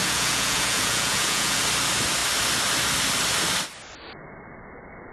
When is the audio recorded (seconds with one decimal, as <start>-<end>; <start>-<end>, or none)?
1.6-5.1